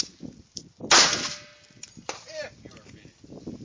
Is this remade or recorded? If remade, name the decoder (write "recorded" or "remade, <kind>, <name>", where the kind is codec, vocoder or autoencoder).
recorded